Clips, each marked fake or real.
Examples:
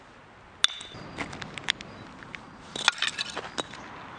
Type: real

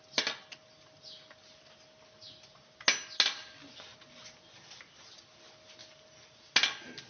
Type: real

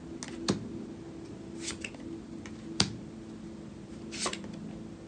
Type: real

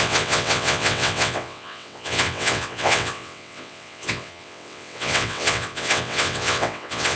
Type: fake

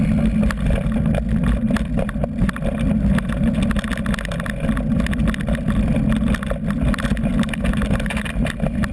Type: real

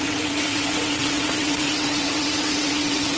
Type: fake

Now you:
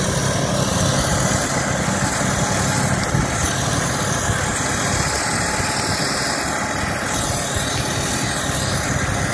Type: real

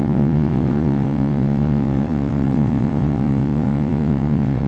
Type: fake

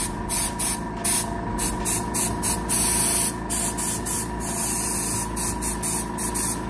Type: real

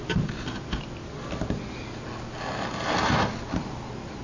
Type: real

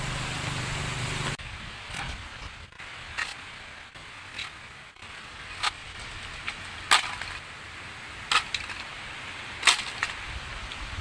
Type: real